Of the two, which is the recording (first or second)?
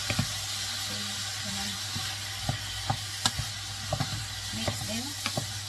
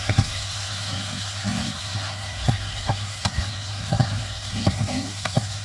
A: first